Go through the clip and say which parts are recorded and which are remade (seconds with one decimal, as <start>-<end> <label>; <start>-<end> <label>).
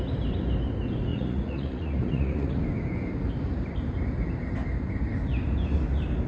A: 0.0-1.1 recorded; 1.1-2.6 remade; 2.6-6.3 recorded